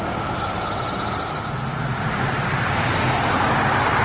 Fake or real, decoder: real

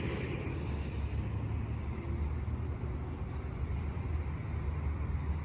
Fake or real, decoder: real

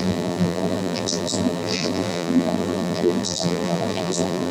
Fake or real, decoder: fake, vocoder, BigVGAN v2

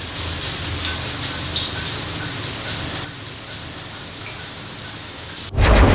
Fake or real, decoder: real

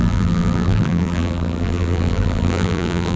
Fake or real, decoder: fake, vocoder, BigVGAN v2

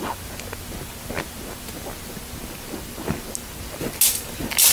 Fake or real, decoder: real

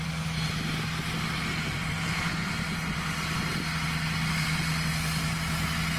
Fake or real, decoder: real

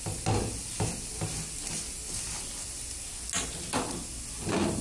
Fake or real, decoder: real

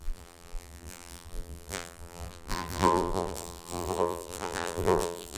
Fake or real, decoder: fake, vocoder, BigVGAN v2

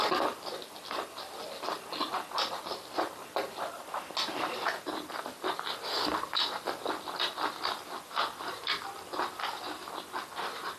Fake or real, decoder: real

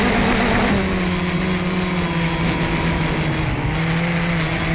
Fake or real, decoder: real